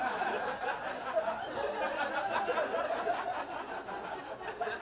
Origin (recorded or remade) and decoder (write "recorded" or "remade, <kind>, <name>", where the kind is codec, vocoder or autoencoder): recorded